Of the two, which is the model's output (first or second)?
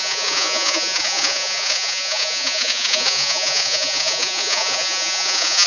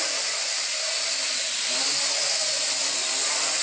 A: first